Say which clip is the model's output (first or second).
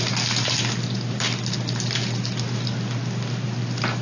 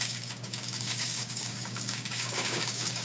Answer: second